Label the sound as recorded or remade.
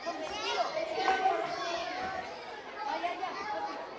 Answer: recorded